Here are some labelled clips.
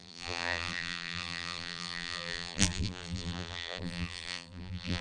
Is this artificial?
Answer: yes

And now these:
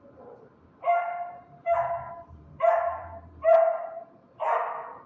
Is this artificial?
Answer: no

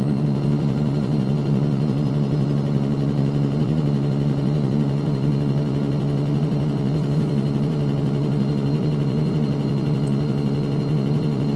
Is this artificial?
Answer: yes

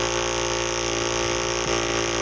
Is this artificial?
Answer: no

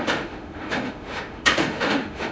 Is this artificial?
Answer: yes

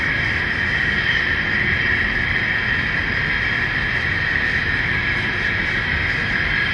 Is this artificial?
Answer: no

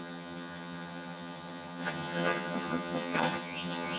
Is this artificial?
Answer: yes